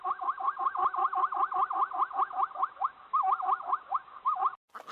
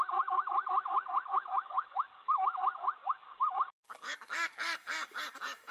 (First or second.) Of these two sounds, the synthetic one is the second